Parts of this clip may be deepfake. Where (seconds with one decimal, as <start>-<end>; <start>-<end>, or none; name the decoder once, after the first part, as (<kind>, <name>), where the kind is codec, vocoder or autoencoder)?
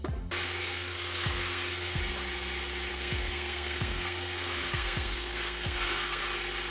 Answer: 0.6-2.0 (codec, SNAC); 2.9-6.2